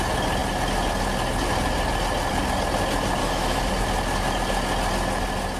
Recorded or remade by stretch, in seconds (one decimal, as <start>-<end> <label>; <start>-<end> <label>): 0.0-3.2 recorded; 3.2-3.7 remade; 3.7-5.6 recorded